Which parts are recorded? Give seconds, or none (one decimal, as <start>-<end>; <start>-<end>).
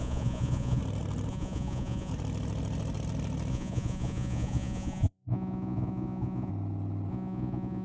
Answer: 0.8-1.3; 2.1-3.5; 6.5-7.1